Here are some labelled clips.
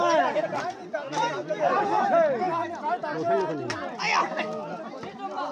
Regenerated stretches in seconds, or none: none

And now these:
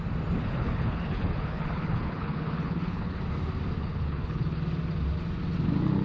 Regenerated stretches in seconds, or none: 0.4-3.2 (codec, HILCodec); 3.8-4.6

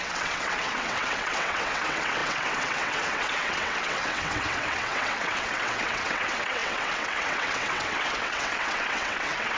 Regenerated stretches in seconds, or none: 0.0-9.6 (vocoder, WaveNeXt)

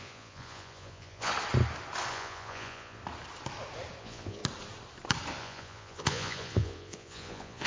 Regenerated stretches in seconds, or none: 0.0-1.3 (vocoder, Vocos); 2.1-3.0; 4.0-4.4; 5.4-7.7

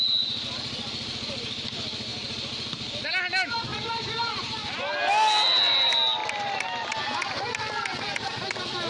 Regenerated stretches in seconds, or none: 3.7-4.3 (vocoder, BigVGAN v2)

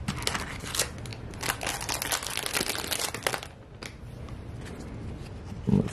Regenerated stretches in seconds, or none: none